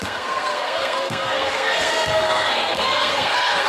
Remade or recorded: remade